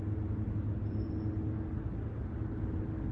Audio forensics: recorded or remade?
recorded